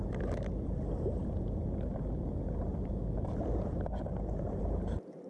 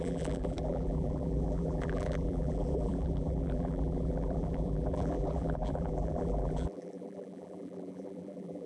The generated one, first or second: second